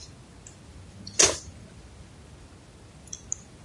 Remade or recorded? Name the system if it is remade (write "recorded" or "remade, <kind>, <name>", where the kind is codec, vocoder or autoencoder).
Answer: recorded